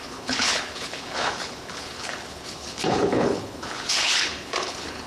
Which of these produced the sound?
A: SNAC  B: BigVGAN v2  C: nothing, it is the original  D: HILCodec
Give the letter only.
D